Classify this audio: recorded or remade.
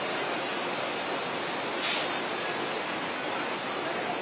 recorded